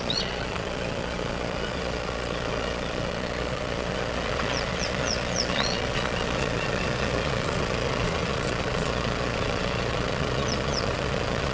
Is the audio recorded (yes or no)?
no